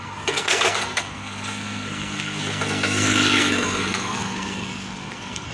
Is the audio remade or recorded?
remade